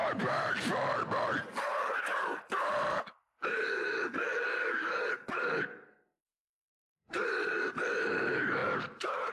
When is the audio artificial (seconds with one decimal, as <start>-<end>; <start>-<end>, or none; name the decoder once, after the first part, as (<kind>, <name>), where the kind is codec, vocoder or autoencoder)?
0.0-0.5 (vocoder, BigVGAN v2)